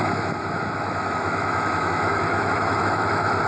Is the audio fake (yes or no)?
yes